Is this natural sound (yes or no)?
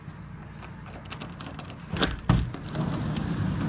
yes